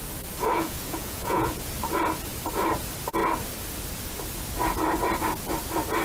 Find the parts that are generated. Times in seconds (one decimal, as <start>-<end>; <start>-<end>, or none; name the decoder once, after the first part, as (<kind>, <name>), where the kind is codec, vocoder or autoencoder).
0.5-1.7 (vocoder, Vocos)